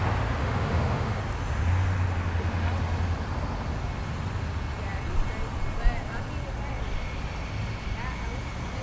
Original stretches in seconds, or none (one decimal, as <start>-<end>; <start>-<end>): 0.0-0.4; 1.2-8.8